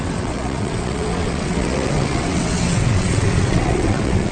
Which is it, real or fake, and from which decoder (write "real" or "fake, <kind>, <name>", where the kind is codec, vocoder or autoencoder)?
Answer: fake, vocoder, WaveNeXt